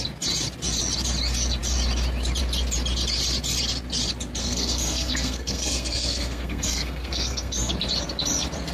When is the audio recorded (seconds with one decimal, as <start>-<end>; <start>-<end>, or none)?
0.0-4.4; 7.7-8.7